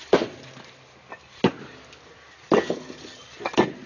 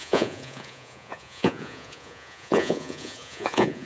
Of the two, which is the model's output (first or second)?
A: second